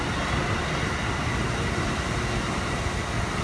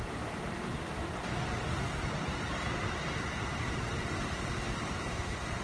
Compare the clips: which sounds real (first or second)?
first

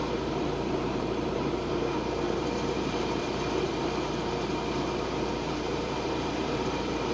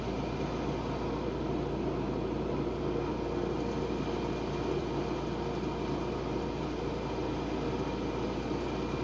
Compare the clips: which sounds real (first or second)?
second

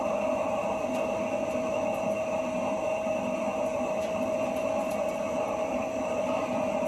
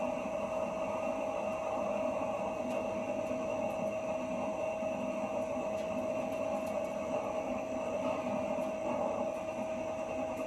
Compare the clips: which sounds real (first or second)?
second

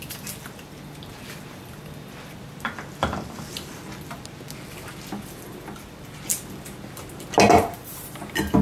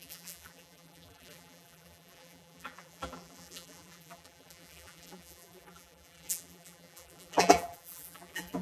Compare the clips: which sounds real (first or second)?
first